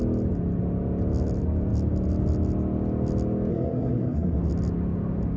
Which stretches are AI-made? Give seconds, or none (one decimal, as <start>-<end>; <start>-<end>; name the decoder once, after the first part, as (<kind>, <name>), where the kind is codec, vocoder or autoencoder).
3.5-4.4 (codec, SNAC)